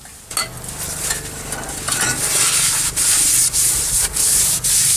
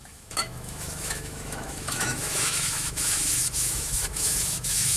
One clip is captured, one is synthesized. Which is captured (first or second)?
first